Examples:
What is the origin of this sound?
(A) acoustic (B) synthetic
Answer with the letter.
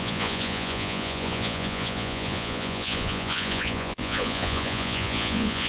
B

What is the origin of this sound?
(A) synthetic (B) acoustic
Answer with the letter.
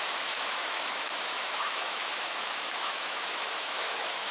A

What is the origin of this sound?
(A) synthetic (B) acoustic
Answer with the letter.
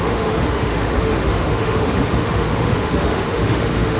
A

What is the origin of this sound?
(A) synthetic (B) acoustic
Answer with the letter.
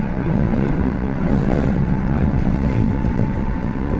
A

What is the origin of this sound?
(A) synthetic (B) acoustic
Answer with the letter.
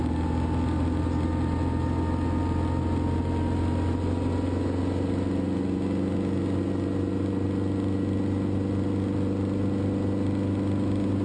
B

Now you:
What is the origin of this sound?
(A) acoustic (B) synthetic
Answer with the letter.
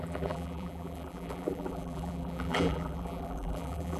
B